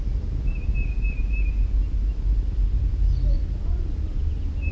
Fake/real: real